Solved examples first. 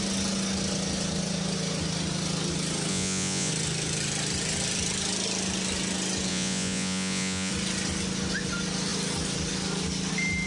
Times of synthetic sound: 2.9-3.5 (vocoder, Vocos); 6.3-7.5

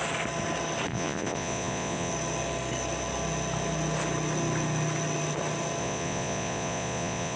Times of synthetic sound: 0.9-2.1 (vocoder, Vocos); 5.8-7.4

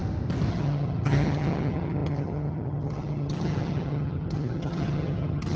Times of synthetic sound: 0.5-5.6 (vocoder, HiFi-GAN)